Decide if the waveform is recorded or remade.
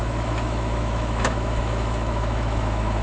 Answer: remade